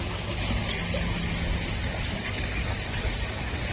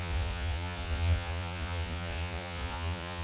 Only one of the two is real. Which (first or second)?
first